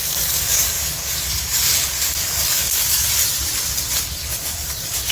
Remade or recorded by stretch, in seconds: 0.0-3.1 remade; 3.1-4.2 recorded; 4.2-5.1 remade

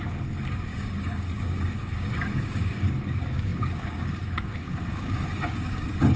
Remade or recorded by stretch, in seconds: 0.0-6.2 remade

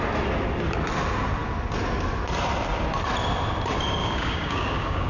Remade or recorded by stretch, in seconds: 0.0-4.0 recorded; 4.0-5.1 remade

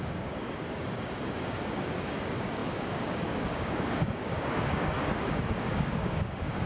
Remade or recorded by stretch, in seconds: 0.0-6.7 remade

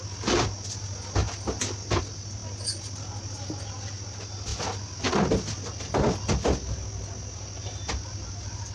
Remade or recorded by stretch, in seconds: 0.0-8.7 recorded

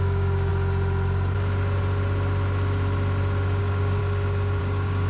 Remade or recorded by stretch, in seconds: 0.0-0.5 remade; 0.5-3.6 recorded; 3.6-4.0 remade; 4.0-4.6 recorded; 4.6-5.1 remade